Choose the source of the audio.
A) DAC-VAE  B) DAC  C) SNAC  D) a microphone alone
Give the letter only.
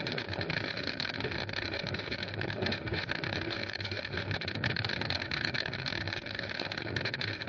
A